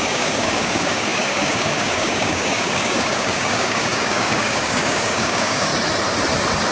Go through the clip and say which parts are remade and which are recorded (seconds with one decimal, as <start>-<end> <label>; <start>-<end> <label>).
0.0-5.7 remade; 5.7-6.7 recorded